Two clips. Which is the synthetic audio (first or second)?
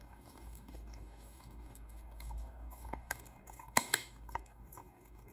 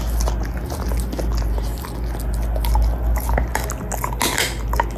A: first